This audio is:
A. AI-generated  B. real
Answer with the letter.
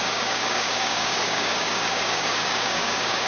A